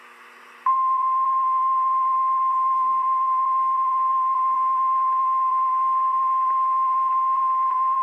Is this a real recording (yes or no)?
no